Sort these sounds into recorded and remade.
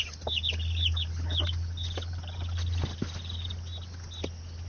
recorded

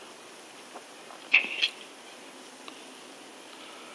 recorded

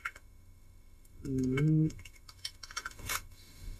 remade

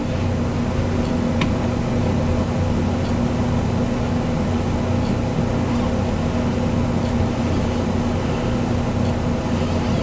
recorded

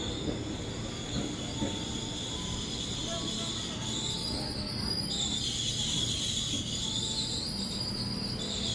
recorded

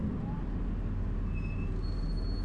recorded